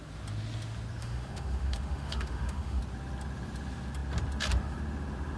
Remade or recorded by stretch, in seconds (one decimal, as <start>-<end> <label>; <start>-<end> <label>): 0.0-1.0 recorded; 1.0-2.8 remade; 2.8-5.4 recorded